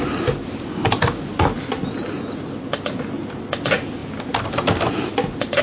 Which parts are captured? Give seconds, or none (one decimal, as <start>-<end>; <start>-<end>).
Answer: 0.0-5.6

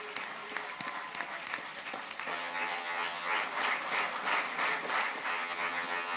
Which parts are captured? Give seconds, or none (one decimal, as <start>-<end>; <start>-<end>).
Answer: 0.0-2.3; 3.4-5.3

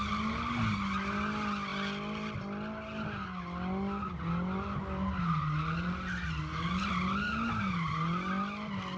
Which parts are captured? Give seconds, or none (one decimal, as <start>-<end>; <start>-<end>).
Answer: 0.0-9.0

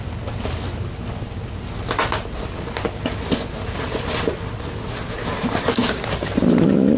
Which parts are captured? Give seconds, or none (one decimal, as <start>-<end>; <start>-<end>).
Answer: 0.0-7.0

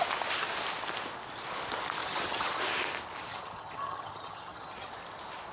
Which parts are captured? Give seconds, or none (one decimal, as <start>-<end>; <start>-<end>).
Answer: 0.0-2.0; 2.6-3.3; 4.9-5.5

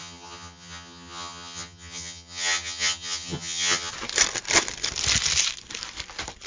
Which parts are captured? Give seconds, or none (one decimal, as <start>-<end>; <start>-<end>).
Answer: 3.9-6.5

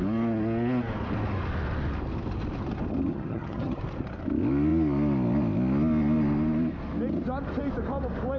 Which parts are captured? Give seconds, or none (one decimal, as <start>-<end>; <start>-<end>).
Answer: 0.0-3.1; 3.8-8.4